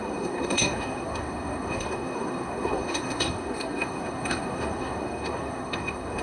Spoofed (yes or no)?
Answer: yes